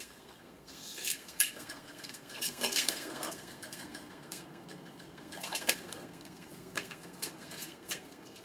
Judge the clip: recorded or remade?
remade